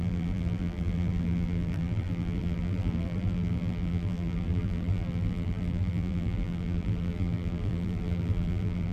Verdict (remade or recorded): remade